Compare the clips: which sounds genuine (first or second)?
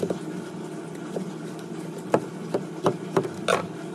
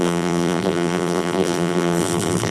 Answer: first